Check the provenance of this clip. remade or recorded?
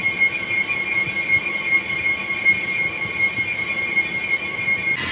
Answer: recorded